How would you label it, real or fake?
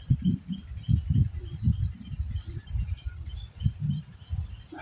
real